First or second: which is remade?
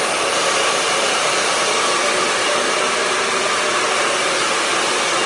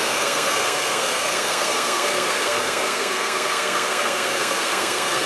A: second